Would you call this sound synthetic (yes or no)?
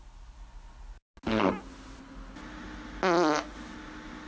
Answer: no